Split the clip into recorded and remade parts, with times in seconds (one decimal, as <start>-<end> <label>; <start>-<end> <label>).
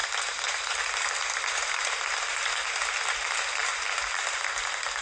0.0-5.0 remade